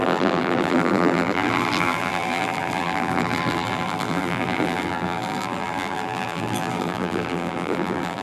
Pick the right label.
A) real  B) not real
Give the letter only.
B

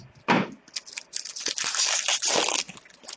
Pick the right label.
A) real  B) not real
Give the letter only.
A